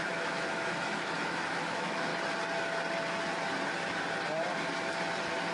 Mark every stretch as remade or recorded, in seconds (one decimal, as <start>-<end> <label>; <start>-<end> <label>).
0.0-2.1 remade; 2.1-5.5 recorded